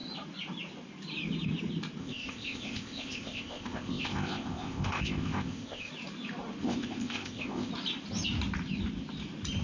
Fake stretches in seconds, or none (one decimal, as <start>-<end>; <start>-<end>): 2.0-5.9; 6.6-7.7